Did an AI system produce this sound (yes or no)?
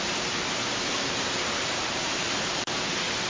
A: yes